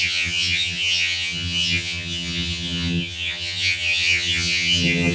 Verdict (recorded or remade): remade